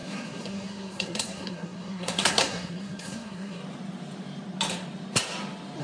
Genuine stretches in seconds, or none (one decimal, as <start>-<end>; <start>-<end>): 3.6-5.8